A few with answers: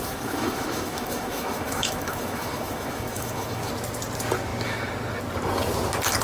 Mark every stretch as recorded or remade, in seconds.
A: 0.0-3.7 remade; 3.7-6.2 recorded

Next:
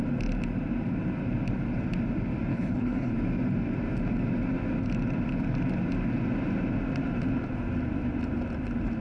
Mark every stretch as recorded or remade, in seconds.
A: 0.0-2.5 recorded; 2.5-3.1 remade; 3.1-9.0 recorded

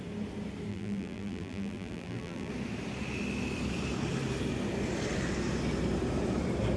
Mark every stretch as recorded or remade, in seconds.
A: 0.0-0.7 recorded; 0.7-2.5 remade; 2.5-6.8 recorded